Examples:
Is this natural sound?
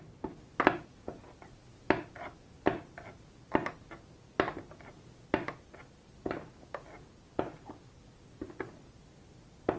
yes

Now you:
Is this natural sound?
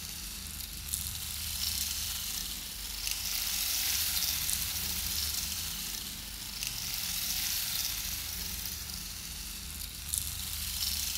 yes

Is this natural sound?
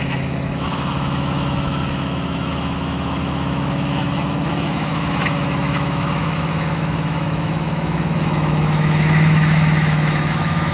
no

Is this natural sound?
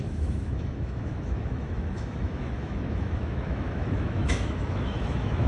no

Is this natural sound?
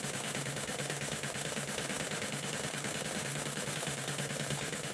no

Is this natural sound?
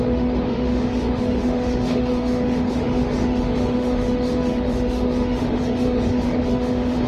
no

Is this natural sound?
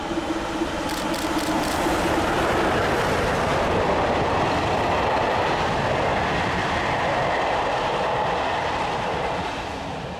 yes